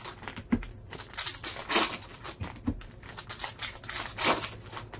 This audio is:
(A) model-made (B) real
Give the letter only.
B